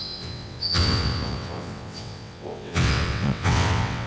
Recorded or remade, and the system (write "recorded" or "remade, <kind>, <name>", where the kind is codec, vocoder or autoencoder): remade, vocoder, WaveNeXt